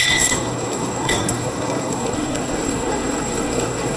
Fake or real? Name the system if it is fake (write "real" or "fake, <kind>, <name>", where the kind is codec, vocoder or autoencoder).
fake, codec, SNAC